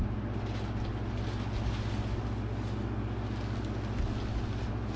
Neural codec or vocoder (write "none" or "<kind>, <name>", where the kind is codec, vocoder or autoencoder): none